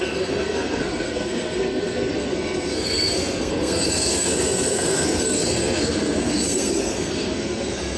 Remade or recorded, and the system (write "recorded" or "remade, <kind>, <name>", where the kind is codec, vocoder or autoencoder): remade, codec, SNAC